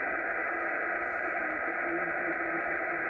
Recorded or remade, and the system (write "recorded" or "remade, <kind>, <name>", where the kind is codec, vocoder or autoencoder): recorded